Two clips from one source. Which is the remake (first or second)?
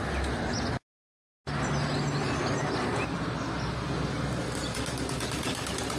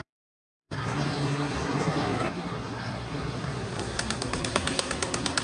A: second